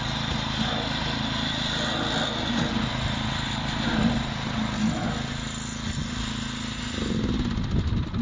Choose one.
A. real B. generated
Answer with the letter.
A